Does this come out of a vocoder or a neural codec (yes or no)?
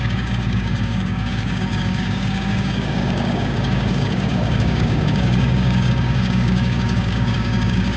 yes